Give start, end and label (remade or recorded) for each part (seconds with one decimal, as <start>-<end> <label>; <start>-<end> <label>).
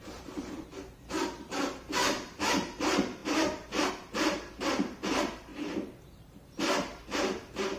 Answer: 0.0-0.7 remade; 0.7-1.2 recorded; 1.2-3.2 remade; 3.2-3.9 recorded; 3.9-6.9 remade; 6.9-7.8 recorded